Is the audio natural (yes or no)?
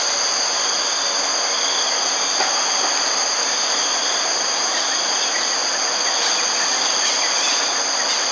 yes